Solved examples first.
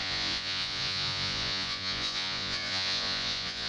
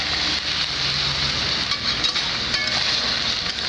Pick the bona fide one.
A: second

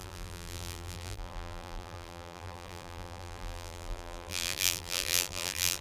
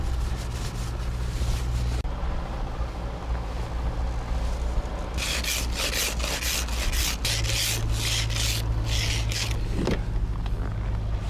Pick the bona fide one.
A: second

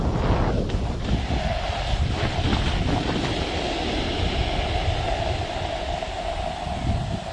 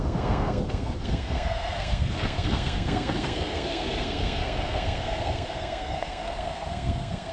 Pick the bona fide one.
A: first